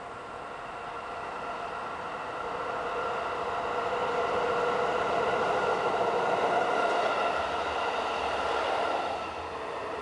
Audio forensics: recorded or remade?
recorded